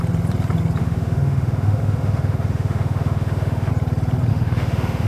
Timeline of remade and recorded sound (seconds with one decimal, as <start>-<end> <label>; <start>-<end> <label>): 0.0-0.8 recorded; 0.8-3.7 remade; 3.7-4.3 recorded; 4.3-5.1 remade

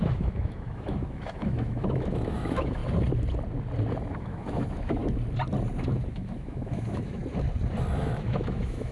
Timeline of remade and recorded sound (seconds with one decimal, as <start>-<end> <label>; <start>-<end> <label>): 0.0-2.8 remade; 2.8-4.1 recorded; 4.1-5.0 remade; 5.0-6.1 recorded; 6.1-7.2 remade; 7.2-7.9 recorded; 7.9-8.9 remade

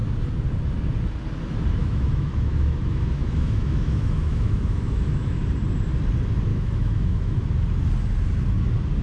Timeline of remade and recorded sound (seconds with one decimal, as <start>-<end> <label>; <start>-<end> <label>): 0.0-1.8 recorded; 1.8-5.4 remade; 5.4-6.5 recorded; 6.5-7.4 remade; 7.4-9.0 recorded

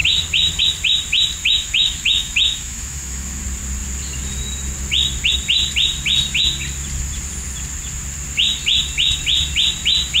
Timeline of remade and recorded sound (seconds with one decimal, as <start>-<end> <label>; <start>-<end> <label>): 0.0-1.4 recorded; 1.4-3.4 remade; 3.4-10.2 recorded

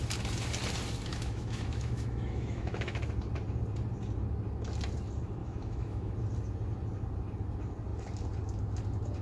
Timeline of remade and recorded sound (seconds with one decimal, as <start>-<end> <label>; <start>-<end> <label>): 0.0-1.1 recorded; 1.1-3.0 remade; 3.0-5.4 recorded; 5.4-6.1 remade; 6.1-9.2 recorded

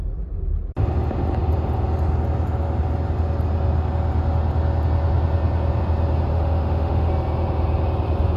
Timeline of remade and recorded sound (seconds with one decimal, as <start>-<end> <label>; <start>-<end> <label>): 0.0-6.3 recorded; 6.3-7.1 remade; 7.1-8.4 recorded